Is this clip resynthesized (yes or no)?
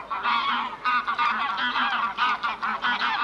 no